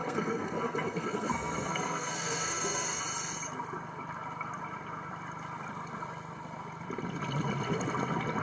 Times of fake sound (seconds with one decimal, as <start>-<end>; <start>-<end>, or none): 0.0-3.0